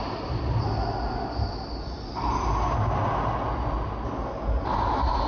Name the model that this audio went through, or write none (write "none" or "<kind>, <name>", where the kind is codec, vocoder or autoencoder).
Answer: none